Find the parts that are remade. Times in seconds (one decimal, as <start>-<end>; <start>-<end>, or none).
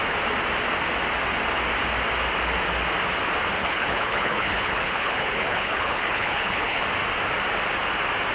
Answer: 3.6-6.8